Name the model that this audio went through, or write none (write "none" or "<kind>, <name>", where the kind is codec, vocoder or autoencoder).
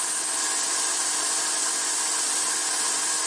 none